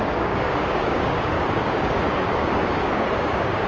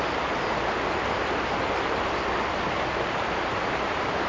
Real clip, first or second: second